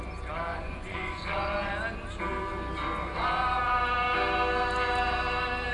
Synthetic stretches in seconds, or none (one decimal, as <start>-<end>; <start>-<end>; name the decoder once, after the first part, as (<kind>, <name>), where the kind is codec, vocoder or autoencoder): 0.5-1.7 (vocoder, Vocos)